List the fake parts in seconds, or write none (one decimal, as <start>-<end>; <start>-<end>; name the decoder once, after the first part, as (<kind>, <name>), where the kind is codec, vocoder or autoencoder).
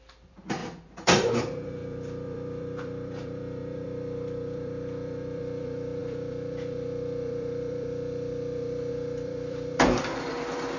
0.0-10.8 (vocoder, BigVGAN v2)